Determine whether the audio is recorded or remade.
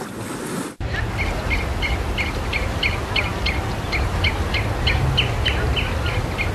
recorded